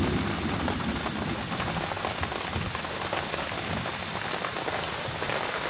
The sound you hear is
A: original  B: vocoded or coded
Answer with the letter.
A